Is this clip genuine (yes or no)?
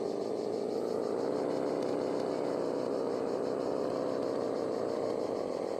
yes